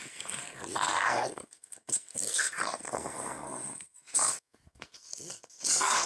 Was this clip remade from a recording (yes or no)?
yes